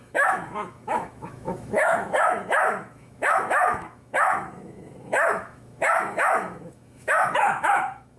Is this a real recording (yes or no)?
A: no